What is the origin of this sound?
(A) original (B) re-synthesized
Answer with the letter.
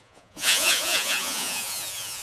B